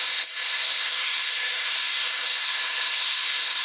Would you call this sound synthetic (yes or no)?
yes